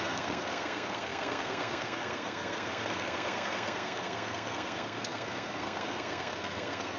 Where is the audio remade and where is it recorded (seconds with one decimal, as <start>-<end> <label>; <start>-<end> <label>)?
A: 0.0-7.0 remade